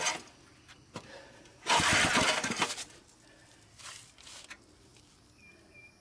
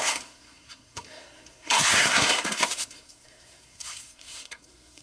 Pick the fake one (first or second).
second